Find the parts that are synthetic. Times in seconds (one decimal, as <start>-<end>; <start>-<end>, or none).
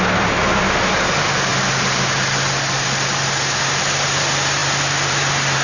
none